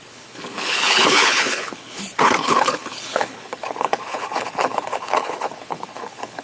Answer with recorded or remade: remade